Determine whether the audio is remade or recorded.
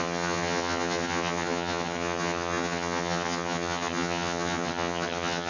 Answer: remade